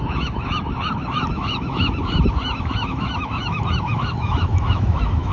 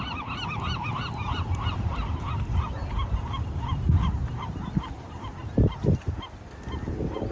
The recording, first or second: second